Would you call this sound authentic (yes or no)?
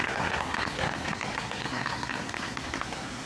no